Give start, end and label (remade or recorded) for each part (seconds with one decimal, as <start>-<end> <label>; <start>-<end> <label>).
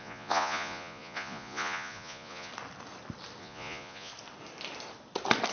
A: 0.0-2.5 remade; 2.5-3.4 recorded; 3.4-4.1 remade; 4.1-5.5 recorded